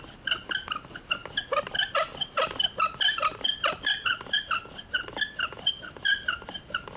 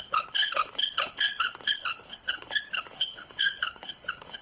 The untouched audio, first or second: first